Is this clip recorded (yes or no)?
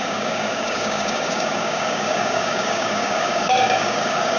no